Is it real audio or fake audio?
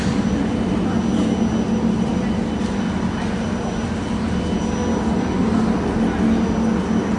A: real